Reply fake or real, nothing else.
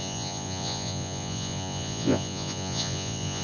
fake